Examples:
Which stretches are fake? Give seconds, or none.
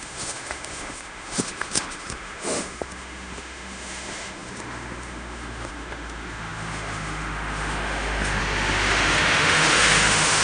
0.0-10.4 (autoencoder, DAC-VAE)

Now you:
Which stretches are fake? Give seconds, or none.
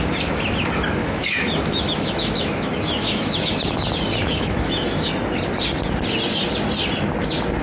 1.0-3.5 (autoencoder, DAC-VAE); 4.2-5.1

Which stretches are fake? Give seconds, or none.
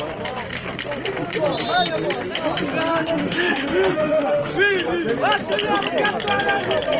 2.9-4.5 (autoencoder, DAC-VAE)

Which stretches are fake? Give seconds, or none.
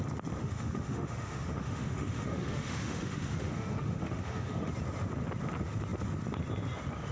0.4-4.7 (autoencoder, DAC-VAE)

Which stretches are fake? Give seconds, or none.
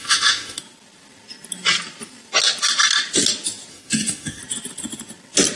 0.0-0.6 (autoencoder, DAC-VAE); 3.7-4.4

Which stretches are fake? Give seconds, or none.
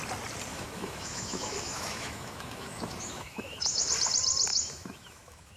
0.5-3.9 (autoencoder, DAC-VAE); 4.5-5.6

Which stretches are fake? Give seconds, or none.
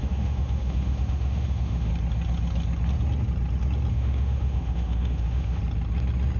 0.0-1.9 (autoencoder, DAC-VAE); 3.9-5.6